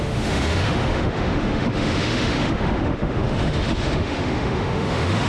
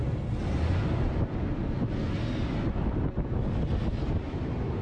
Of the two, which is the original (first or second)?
second